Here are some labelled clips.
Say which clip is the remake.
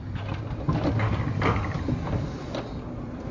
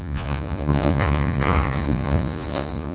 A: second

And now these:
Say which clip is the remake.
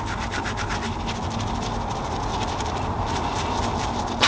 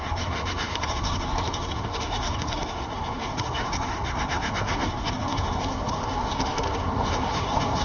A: second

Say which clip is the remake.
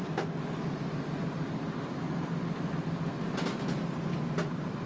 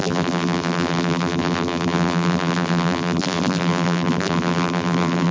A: second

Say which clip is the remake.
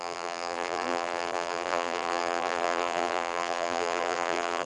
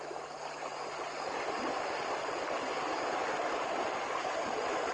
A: first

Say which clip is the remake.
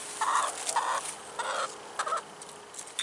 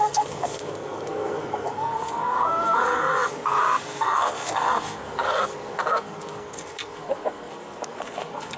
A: second